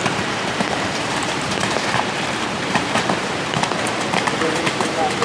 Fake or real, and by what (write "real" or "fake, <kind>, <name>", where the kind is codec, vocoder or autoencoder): fake, vocoder, BigVGAN v2